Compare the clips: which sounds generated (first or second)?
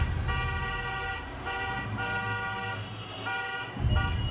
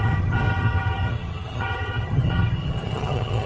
second